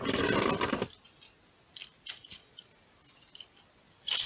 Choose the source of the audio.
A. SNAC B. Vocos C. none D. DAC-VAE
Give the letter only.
C